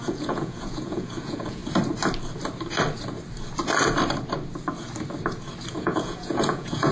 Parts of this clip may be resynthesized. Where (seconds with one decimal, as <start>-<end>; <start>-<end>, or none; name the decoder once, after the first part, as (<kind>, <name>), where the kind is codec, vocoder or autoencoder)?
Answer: 0.0-1.6 (vocoder, Vocos); 5.7-6.9